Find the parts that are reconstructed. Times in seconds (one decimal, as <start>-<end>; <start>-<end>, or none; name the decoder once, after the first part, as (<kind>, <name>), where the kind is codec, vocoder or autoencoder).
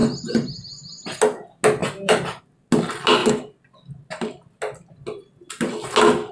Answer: 1.8-2.4 (vocoder, BigVGAN v2)